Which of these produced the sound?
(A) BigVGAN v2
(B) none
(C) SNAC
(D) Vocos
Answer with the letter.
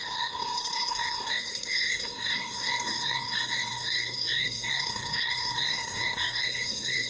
C